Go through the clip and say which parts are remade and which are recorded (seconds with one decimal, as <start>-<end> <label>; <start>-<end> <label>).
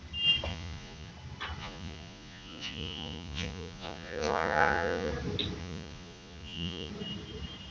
0.0-0.5 recorded; 0.5-1.1 remade; 1.1-1.6 recorded; 1.6-5.1 remade; 5.1-5.6 recorded; 5.6-6.9 remade; 6.9-7.7 recorded